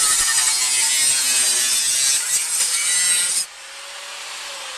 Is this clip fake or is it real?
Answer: real